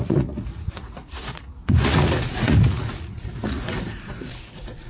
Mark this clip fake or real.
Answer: fake